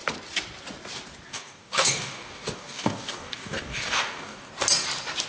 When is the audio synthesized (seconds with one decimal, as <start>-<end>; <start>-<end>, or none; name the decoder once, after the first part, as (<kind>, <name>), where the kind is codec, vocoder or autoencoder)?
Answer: 1.3-4.5 (codec, DAC)